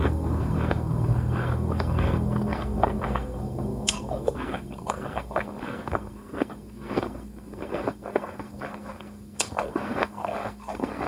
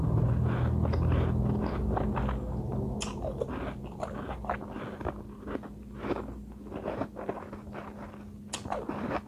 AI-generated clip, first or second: first